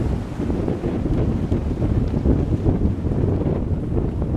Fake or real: real